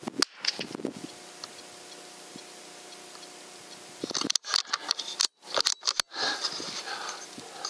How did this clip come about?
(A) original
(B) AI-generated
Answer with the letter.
A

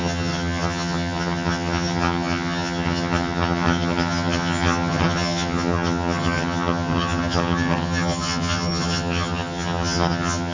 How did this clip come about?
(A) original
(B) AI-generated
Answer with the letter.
B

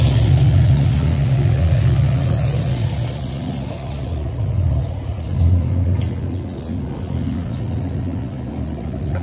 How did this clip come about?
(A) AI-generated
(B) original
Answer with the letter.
A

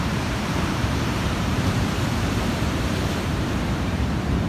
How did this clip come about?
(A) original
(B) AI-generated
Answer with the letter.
B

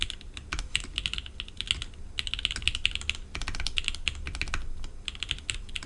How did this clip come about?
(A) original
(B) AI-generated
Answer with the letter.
A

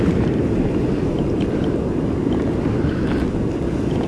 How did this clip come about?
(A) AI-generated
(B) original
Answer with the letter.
B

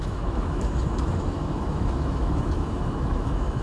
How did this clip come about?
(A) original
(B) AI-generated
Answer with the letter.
B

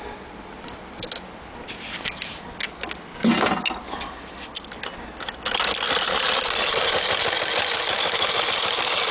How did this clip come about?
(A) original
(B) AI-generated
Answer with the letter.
A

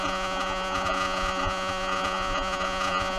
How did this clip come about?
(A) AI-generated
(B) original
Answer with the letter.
A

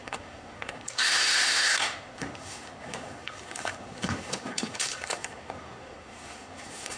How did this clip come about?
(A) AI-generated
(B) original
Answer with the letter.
A